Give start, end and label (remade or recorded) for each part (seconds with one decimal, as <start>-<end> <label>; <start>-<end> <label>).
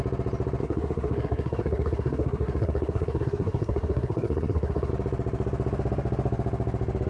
0.0-0.6 recorded; 0.6-4.9 remade; 4.9-7.1 recorded